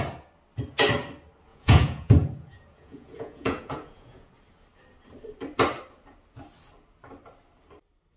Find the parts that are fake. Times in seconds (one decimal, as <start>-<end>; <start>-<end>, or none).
1.5-4.3